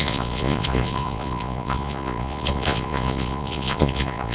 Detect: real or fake fake